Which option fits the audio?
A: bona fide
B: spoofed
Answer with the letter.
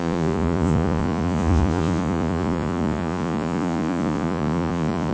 B